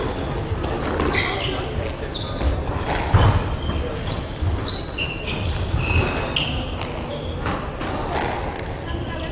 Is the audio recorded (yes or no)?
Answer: yes